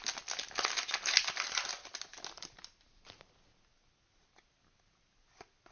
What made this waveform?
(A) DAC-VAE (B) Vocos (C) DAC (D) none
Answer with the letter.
D